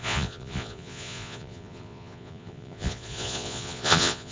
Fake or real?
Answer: fake